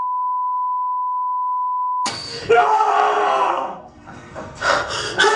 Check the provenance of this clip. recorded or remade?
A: remade